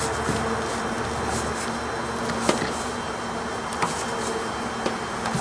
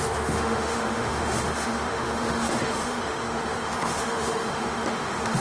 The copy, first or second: second